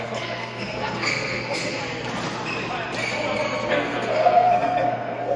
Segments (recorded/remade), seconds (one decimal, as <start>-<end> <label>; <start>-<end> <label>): 0.0-1.8 remade; 1.8-3.7 recorded; 3.7-5.4 remade